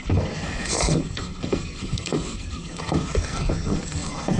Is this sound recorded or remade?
remade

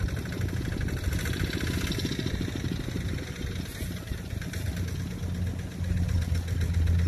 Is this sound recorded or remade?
recorded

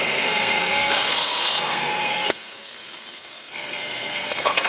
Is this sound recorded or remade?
remade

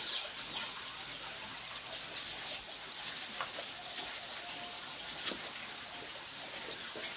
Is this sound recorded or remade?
recorded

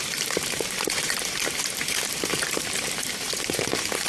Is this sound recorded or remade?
remade